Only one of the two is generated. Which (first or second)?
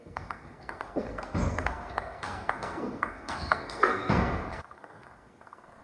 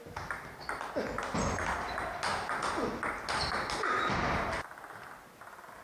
first